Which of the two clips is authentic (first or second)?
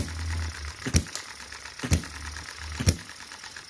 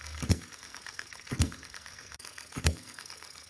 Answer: first